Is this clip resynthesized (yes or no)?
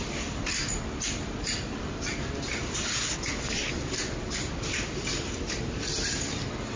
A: no